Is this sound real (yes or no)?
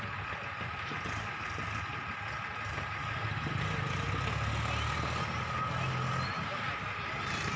yes